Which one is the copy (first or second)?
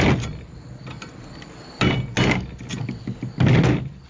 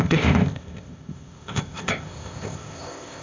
second